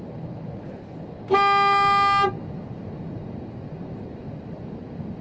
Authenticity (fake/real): real